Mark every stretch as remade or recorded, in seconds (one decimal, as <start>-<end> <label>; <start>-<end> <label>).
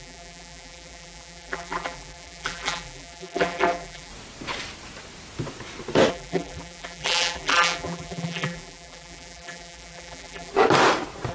0.0-4.1 remade; 4.1-6.1 recorded; 6.1-10.5 remade; 10.5-11.3 recorded